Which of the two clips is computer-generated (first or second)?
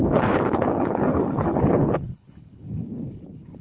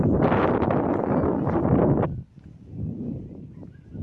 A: first